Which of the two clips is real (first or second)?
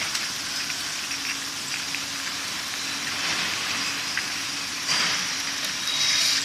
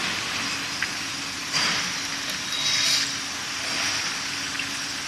second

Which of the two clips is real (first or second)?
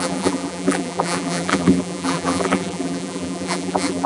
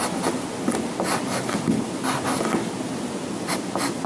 second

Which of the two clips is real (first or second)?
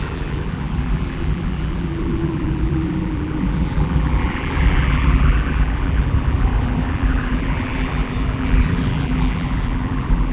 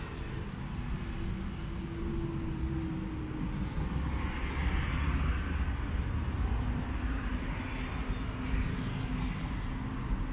second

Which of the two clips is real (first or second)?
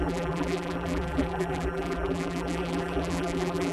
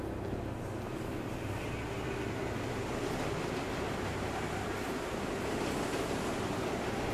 second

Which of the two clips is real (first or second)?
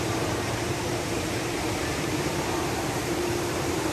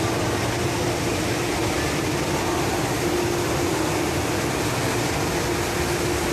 second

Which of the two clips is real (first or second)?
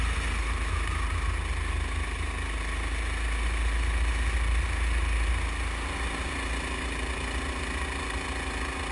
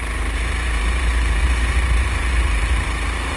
first